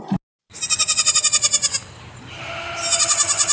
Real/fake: real